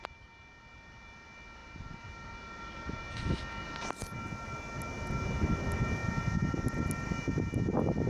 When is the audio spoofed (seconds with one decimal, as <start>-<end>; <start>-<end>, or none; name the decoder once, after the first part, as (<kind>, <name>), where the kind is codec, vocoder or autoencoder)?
1.6-3.4 (vocoder, BigVGAN v2)